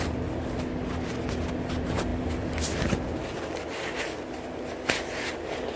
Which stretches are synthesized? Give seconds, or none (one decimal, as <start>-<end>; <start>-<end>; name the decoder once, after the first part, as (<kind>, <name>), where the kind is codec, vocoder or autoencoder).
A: none

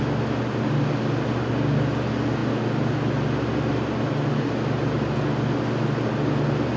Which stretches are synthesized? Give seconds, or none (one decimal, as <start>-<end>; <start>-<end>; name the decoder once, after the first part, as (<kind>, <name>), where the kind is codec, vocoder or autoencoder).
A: none

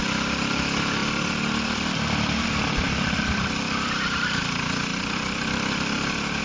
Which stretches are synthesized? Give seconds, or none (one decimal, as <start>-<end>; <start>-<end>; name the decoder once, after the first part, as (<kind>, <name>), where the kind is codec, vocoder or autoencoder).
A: 1.0-4.4 (vocoder, BigVGAN v2); 4.9-6.4

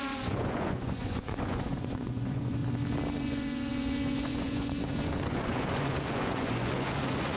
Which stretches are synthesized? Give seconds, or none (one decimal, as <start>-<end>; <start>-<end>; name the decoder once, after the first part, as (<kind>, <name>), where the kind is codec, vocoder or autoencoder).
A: 0.0-2.6 (vocoder, Vocos); 3.2-7.4

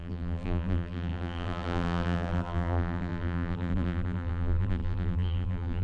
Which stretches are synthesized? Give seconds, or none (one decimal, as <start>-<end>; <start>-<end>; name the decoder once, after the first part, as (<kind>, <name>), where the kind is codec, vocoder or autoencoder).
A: 0.0-5.8 (vocoder, BigVGAN v2)

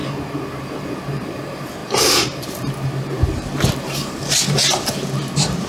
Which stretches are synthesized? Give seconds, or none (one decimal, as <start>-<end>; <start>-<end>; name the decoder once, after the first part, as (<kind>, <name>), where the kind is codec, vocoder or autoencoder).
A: 0.5-5.7 (vocoder, BigVGAN v2)

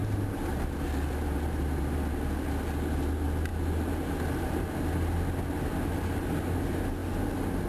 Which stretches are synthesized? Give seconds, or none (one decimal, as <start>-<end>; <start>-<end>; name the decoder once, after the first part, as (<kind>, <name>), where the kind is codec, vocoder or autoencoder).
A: 0.0-1.8 (vocoder, BigVGAN v2)